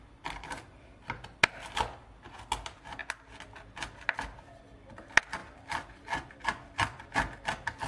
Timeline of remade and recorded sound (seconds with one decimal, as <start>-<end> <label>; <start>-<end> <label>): 0.0-5.4 recorded; 5.4-6.3 remade; 6.3-7.9 recorded